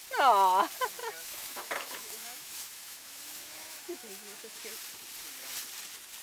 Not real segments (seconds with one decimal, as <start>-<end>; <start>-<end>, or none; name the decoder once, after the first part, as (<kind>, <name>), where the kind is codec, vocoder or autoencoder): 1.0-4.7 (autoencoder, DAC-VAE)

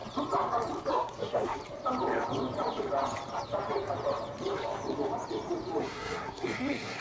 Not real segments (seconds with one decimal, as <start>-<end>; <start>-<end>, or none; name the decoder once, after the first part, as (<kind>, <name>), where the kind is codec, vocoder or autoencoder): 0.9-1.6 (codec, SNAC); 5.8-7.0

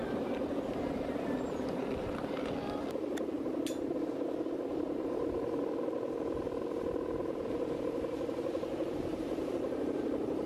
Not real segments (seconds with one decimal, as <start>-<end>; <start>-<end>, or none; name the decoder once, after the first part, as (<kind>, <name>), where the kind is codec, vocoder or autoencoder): none